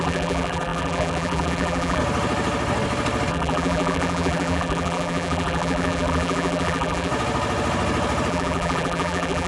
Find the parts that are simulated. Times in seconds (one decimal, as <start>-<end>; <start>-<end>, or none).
0.0-2.0; 3.3-7.1; 8.3-9.5